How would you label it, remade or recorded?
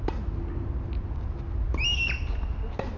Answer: recorded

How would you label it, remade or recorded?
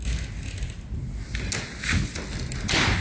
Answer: recorded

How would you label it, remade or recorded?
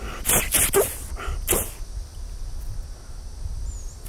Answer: recorded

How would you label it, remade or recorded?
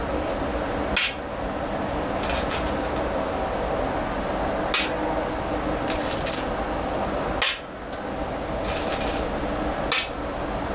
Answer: recorded